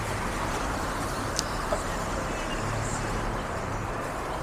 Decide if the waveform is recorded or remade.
remade